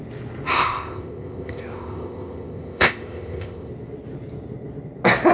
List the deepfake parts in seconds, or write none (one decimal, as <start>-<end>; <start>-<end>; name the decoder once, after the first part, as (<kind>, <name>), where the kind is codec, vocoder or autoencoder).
0.5-3.7 (codec, ZipCodec)